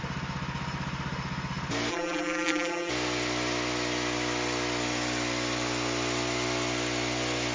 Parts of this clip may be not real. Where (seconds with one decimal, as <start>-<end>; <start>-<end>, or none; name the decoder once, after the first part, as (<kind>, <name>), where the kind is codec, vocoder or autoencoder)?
1.9-2.9 (vocoder, BigVGAN v2)